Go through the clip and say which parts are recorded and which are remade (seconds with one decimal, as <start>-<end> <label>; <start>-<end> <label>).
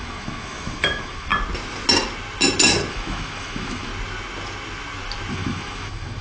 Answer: 0.0-1.3 remade; 1.3-2.9 recorded; 2.9-3.9 remade; 3.9-5.3 recorded; 5.3-6.2 remade